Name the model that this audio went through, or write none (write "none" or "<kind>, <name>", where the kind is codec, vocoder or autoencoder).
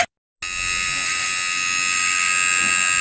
none